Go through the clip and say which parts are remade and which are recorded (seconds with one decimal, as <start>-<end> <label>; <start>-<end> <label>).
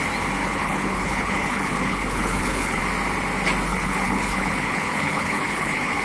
0.0-0.4 recorded; 0.4-2.8 remade; 2.8-3.7 recorded; 3.7-6.0 remade